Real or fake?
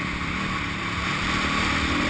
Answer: real